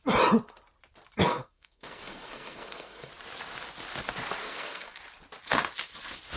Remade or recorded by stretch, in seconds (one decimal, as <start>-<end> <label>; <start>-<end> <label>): 0.0-1.2 recorded; 1.2-3.1 remade; 3.1-4.4 recorded; 4.4-5.0 remade; 5.0-6.4 recorded